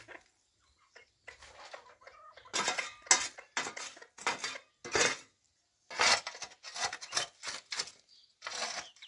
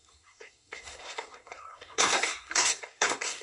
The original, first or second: first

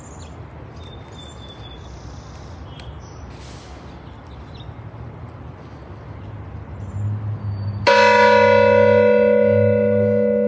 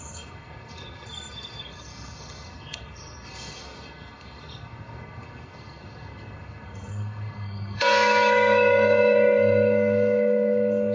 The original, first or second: first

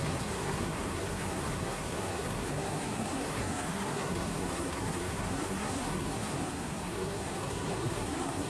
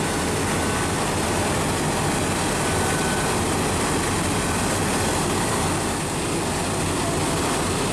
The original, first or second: second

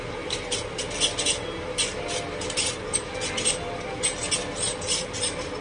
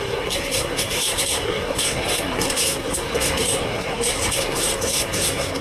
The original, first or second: first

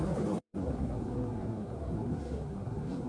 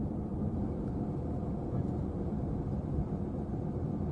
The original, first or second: second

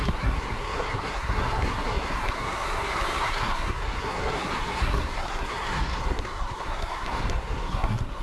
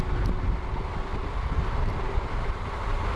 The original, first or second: second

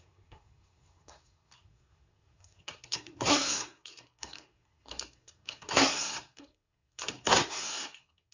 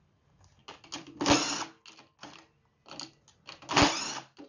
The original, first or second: second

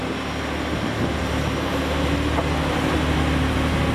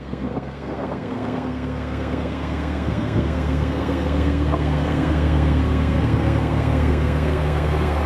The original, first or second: first